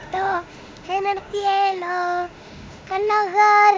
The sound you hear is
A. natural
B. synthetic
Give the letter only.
B